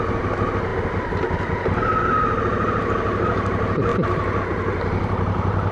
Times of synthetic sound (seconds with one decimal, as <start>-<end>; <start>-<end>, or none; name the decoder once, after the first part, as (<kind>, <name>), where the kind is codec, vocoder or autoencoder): none